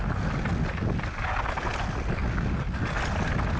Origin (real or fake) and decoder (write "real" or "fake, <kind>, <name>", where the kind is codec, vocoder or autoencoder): real